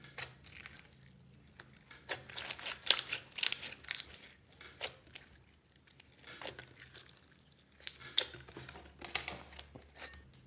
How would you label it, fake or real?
real